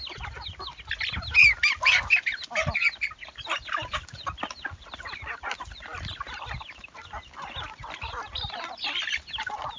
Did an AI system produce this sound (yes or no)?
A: no